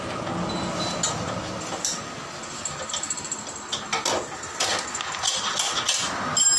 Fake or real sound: real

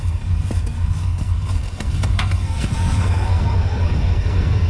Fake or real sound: fake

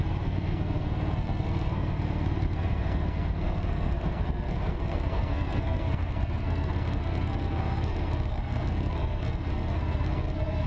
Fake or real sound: fake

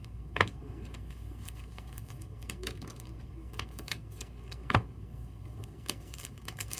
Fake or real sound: fake